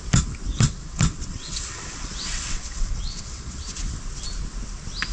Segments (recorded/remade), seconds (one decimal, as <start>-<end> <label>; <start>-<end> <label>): 0.0-0.5 recorded; 0.5-3.6 remade; 3.6-5.1 recorded